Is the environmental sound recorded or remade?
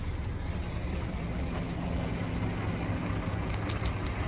recorded